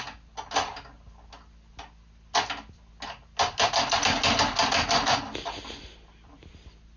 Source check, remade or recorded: recorded